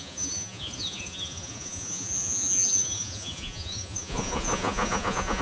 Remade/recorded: remade